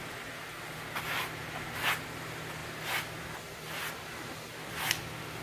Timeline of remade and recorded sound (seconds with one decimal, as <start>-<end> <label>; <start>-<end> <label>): 0.0-5.4 recorded

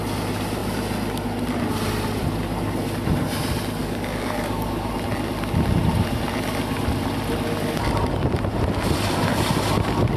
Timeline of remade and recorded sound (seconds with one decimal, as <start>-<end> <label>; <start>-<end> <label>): 0.0-3.8 recorded; 3.8-4.9 remade; 4.9-10.2 recorded

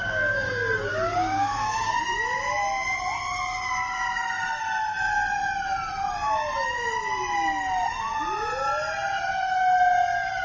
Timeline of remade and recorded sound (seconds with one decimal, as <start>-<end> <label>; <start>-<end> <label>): 0.0-0.9 recorded; 0.9-1.9 remade; 1.9-10.4 recorded

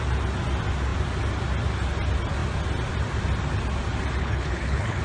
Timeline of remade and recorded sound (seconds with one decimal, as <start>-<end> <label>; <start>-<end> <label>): 0.0-4.2 recorded; 4.2-5.0 remade

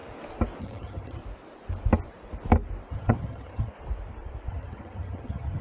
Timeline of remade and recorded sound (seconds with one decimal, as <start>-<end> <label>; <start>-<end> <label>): 0.0-0.6 recorded; 0.6-1.2 remade; 1.2-2.9 recorded; 2.9-3.7 remade; 3.7-4.5 recorded; 4.5-5.6 remade

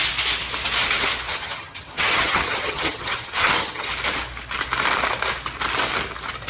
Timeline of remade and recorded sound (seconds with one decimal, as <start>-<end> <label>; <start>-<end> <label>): 0.0-1.3 recorded; 1.3-3.9 remade; 3.9-6.5 recorded

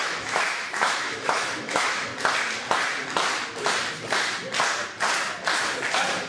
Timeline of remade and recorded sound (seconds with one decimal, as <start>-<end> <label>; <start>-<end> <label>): 0.0-2.1 remade; 2.1-6.3 recorded

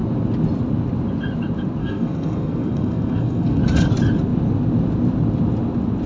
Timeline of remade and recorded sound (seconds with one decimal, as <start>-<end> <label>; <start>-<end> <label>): 0.0-1.8 recorded; 1.8-3.6 remade; 3.6-6.1 recorded